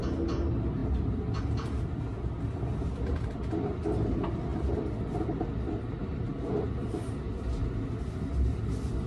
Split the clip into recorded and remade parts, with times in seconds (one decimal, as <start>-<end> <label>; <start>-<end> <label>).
0.0-9.1 recorded